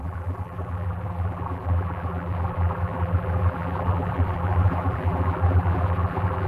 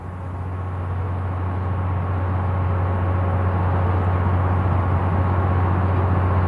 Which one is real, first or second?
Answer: second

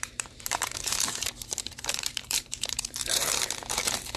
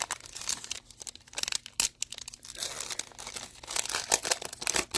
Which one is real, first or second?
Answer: second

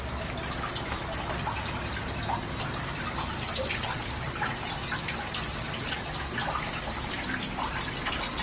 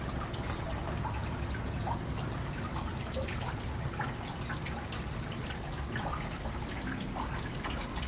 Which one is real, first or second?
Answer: first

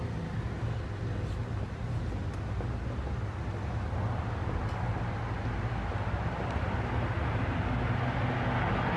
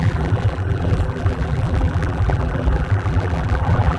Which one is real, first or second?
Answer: first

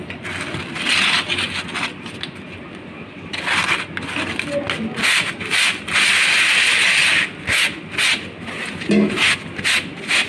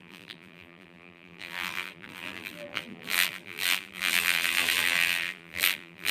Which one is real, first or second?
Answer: first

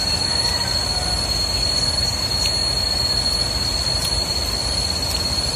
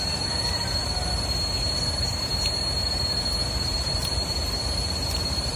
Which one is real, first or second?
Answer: first